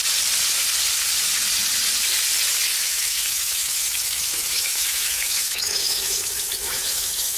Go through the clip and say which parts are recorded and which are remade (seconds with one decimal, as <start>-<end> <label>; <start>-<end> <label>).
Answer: 0.0-2.8 recorded; 2.8-7.4 remade